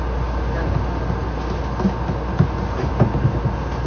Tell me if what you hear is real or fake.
real